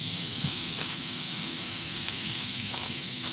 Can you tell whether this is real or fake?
fake